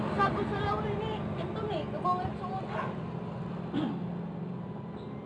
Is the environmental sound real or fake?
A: real